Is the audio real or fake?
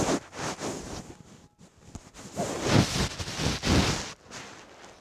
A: real